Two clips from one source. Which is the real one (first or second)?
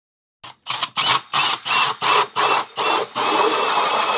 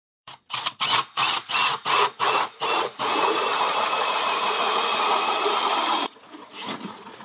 first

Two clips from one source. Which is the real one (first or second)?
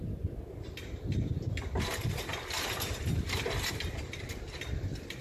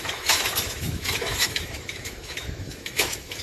first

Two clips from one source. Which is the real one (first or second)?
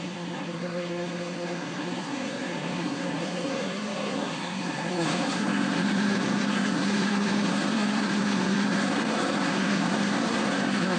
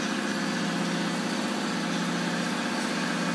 second